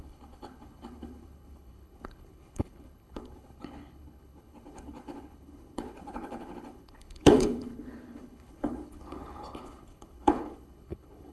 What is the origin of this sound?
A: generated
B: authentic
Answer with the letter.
A